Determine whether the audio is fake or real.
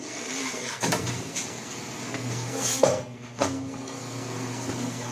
fake